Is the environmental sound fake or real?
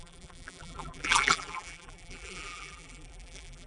fake